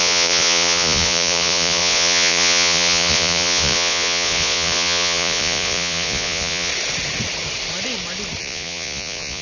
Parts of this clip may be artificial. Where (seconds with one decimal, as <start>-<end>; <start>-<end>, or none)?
0.0-6.7; 8.4-9.4